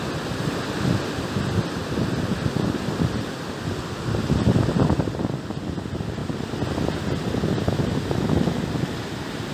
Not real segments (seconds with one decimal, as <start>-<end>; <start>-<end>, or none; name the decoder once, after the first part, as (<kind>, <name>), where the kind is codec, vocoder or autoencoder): none